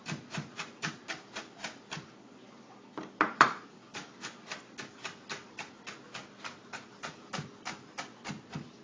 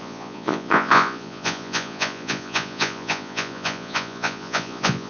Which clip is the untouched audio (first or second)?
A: first